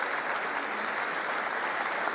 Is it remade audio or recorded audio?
recorded